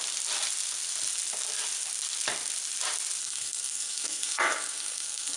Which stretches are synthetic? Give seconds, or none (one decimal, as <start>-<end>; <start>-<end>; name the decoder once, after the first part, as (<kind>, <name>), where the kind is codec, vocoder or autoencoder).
3.2-5.4 (codec, SNAC)

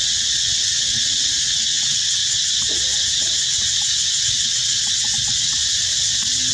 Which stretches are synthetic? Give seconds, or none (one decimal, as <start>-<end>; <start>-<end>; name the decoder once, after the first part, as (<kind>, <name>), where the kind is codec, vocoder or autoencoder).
0.0-2.2 (vocoder, WaveNeXt); 4.2-5.6

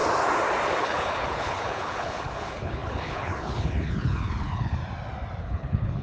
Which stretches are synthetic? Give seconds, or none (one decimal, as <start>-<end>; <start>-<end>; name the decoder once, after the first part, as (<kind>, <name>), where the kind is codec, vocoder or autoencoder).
0.8-4.8 (codec, HILCodec); 5.4-6.0

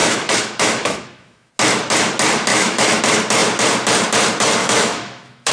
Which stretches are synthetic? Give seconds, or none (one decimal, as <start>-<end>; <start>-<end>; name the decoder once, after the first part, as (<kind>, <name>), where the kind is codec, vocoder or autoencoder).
0.0-1.5 (autoencoder, DAC-VAE); 2.5-3.0; 4.6-5.5

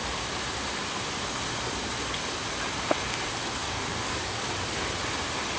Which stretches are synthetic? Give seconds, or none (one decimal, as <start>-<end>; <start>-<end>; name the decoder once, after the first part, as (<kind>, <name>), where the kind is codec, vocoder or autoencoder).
3.6-4.5 (codec, DAC)